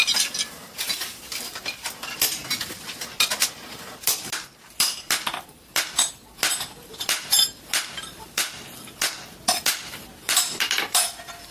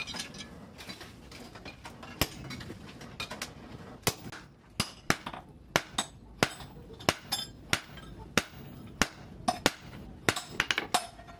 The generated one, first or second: first